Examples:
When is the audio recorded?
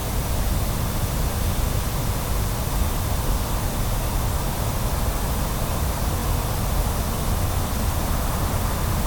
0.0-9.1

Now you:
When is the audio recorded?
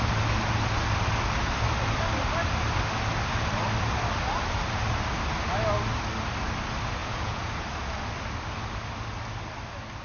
0.0-7.0; 7.5-10.0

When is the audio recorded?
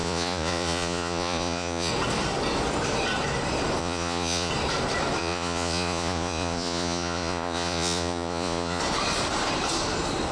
1.9-3.8; 4.5-5.2; 8.8-10.3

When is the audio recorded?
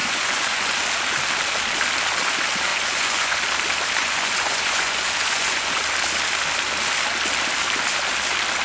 0.8-2.7; 3.4-4.0; 5.8-8.6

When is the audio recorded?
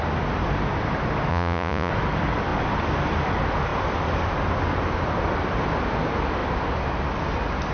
0.0-1.3; 1.9-7.7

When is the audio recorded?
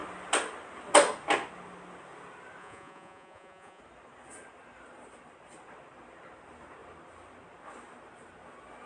0.0-2.6; 3.8-8.9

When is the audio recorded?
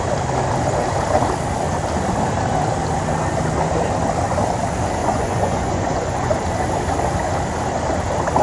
0.0-5.0; 6.3-8.4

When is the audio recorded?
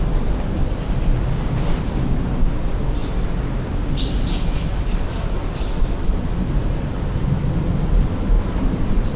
0.0-9.2